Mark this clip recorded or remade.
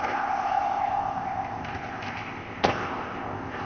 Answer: remade